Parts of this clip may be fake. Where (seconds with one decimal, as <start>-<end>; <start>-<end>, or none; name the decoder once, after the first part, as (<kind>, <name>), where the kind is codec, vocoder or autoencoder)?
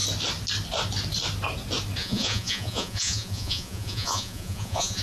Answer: 2.0-5.0 (vocoder, Vocos)